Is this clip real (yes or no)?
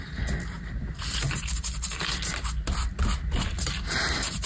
yes